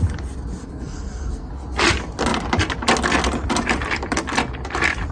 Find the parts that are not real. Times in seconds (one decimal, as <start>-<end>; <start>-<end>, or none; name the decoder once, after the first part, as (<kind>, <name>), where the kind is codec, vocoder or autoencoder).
0.6-1.5 (codec, SNAC)